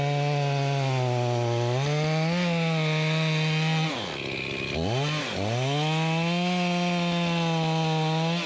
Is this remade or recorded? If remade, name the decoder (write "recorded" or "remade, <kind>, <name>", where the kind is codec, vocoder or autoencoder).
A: recorded